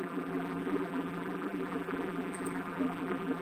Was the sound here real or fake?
fake